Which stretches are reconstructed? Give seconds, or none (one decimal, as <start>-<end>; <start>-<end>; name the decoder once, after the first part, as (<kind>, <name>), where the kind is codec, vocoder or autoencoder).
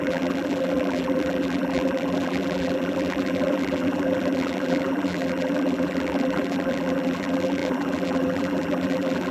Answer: 0.0-9.3 (vocoder, BigVGAN v2)